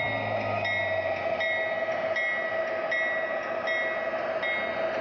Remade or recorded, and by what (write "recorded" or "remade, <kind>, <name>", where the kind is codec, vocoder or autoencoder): recorded